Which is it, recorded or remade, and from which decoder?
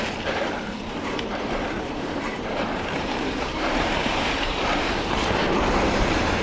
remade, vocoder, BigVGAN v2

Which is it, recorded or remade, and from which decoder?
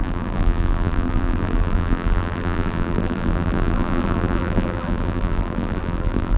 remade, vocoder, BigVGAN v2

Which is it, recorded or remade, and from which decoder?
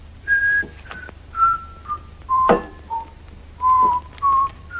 remade, vocoder, BigVGAN v2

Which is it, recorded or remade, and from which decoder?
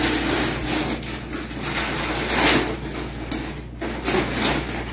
recorded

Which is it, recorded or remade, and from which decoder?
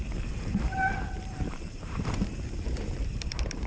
remade, vocoder, BigVGAN v2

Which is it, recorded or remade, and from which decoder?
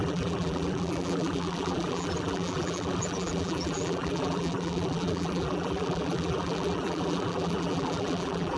remade, vocoder, BigVGAN v2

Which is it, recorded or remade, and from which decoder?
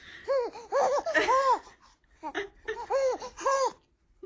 recorded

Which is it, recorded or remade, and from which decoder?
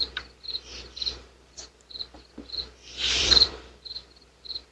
remade, vocoder, BigVGAN v2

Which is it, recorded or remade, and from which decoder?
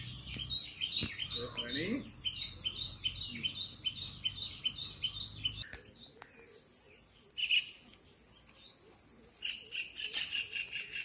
recorded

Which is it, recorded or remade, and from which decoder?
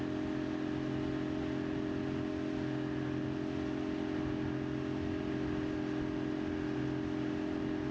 recorded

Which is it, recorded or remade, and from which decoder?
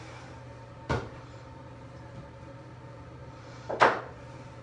remade, vocoder, BigVGAN v2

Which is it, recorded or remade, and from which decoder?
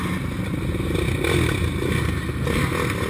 recorded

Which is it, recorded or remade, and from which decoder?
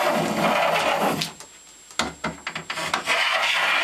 recorded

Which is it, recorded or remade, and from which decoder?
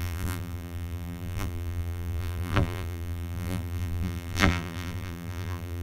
remade, vocoder, BigVGAN v2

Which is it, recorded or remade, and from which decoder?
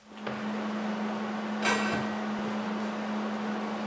recorded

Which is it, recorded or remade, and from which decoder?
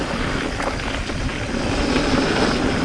recorded